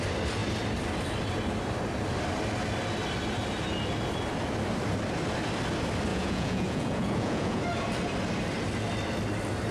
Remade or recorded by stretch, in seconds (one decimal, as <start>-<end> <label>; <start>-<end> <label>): 0.0-6.1 recorded; 6.1-7.6 remade; 7.6-9.7 recorded